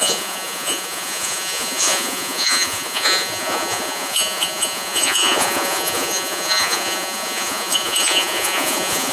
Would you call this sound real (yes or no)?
no